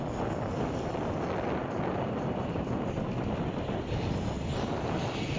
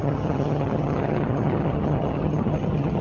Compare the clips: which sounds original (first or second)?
first